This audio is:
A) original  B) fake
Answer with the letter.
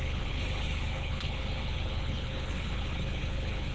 B